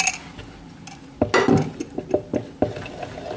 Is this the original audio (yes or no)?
yes